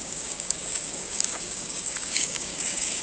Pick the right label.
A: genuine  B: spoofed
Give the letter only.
B